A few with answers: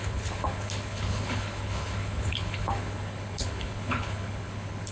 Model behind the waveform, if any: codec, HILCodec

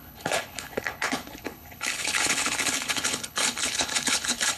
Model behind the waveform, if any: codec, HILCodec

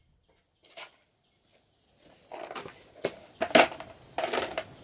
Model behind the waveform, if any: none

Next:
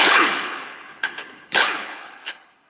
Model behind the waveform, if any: codec, HILCodec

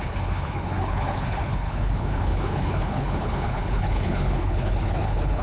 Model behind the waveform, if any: codec, HILCodec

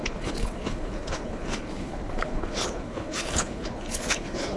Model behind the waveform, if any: codec, HILCodec